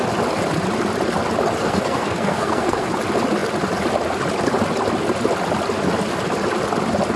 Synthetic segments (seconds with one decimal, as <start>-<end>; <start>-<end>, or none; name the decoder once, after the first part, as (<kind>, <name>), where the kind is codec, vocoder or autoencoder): 1.6-2.9 (codec, SNAC)